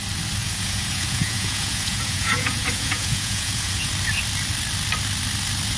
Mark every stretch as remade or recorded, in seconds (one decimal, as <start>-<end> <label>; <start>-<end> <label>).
0.0-0.4 recorded; 0.4-3.9 remade; 3.9-5.8 recorded